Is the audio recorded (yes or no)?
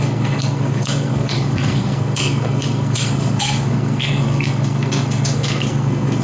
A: no